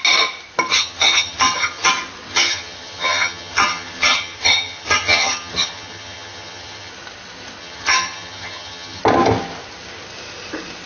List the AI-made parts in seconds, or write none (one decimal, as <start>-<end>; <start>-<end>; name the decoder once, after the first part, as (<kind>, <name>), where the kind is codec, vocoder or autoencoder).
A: 0.7-1.9 (vocoder, HiFi-GAN); 2.3-6.9; 7.6-9.0